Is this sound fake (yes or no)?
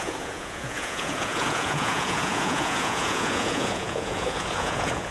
yes